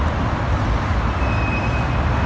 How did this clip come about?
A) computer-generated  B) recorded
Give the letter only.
A